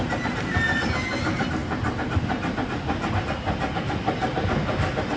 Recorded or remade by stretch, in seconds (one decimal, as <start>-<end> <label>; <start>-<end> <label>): 0.0-5.2 recorded